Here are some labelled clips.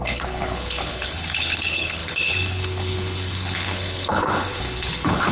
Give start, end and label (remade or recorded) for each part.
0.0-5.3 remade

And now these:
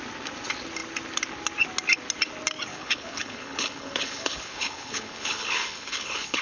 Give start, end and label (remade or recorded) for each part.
0.0-2.7 recorded; 2.7-6.4 remade